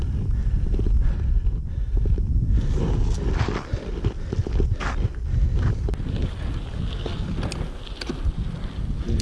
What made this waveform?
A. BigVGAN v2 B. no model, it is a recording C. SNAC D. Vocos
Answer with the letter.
B